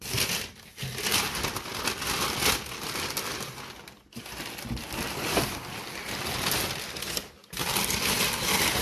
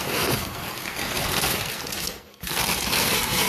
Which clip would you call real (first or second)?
first